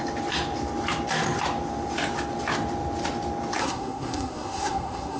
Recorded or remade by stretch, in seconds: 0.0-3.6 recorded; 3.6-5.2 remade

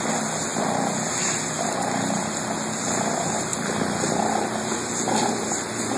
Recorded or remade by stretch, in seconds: 0.0-6.0 recorded